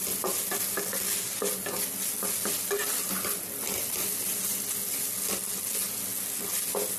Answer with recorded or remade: recorded